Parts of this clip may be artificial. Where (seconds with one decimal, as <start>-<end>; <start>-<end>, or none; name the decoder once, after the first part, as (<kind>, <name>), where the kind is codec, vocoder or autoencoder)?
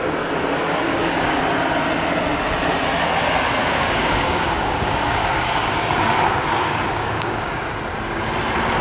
0.9-1.4 (codec, DAC); 3.6-7.6